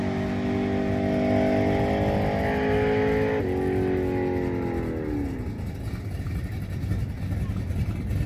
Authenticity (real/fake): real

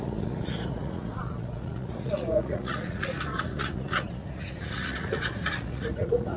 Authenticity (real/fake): fake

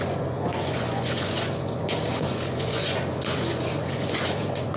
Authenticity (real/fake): fake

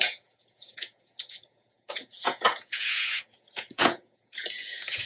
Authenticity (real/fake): fake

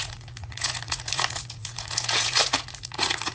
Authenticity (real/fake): fake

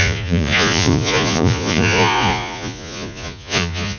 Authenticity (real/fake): fake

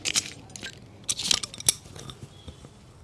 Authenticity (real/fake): real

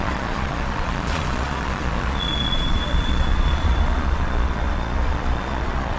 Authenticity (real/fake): fake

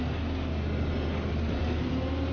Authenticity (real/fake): real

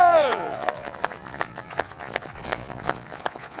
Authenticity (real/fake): fake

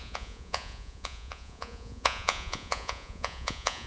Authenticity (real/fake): fake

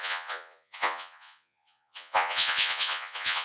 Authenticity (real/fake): fake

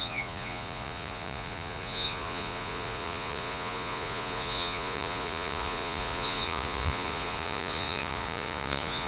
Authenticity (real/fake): fake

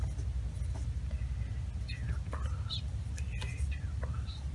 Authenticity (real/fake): real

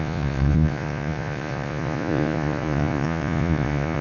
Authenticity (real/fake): fake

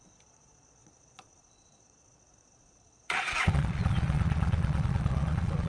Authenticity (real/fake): fake